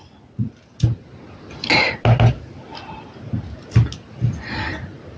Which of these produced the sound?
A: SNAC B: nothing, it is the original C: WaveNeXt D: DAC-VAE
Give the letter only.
B